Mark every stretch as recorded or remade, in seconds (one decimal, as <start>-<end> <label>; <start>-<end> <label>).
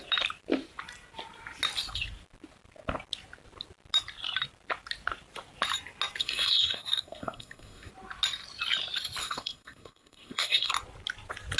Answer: 0.0-6.2 recorded; 6.2-7.9 remade; 7.9-9.2 recorded; 9.2-10.7 remade; 10.7-11.6 recorded